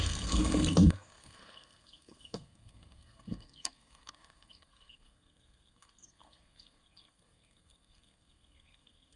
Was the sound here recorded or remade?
remade